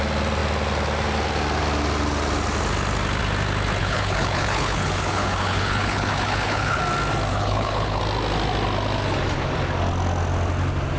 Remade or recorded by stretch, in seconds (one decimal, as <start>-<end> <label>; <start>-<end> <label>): 0.0-3.8 recorded; 3.8-6.8 remade; 6.8-7.3 recorded; 7.3-8.0 remade; 8.0-11.0 recorded